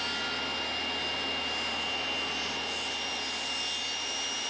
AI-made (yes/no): no